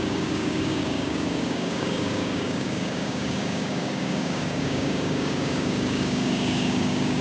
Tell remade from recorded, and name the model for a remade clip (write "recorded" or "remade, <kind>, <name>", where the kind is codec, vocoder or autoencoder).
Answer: remade, codec, DAC